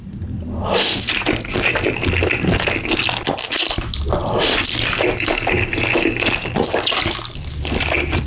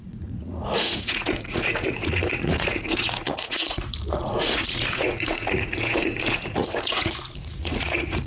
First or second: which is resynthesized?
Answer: second